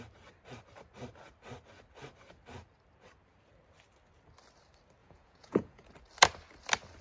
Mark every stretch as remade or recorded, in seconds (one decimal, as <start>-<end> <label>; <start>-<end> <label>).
0.0-5.0 recorded; 5.0-5.9 remade; 5.9-7.0 recorded